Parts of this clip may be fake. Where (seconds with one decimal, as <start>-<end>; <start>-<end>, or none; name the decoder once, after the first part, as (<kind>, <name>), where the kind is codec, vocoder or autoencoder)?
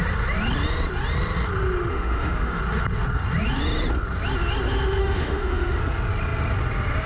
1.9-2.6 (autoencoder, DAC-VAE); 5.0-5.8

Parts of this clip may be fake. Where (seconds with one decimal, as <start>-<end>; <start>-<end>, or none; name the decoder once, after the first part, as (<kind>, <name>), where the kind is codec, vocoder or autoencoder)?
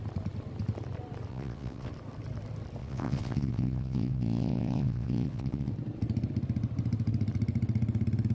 1.3-1.9 (vocoder, WaveNeXt); 2.8-5.7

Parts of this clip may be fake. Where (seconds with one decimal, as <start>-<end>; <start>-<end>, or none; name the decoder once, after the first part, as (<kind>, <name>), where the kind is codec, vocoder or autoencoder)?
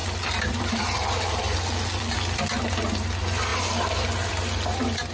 0.0-2.7 (vocoder, BigVGAN v2)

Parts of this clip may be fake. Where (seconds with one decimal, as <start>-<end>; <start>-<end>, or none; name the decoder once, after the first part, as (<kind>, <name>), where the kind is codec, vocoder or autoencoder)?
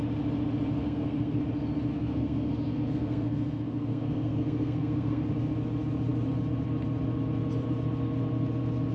0.8-1.4 (codec, SNAC); 1.9-5.3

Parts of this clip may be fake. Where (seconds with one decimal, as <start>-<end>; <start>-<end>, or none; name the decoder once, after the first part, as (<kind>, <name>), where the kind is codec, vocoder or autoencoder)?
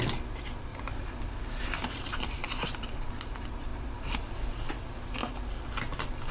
0.7-3.1 (vocoder, BigVGAN v2); 3.7-4.7